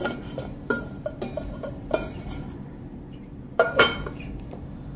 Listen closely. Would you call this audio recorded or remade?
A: remade